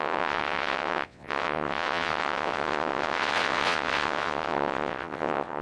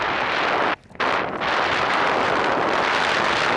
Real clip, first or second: second